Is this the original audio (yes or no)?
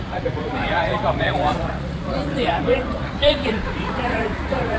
no